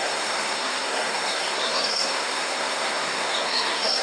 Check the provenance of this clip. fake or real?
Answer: fake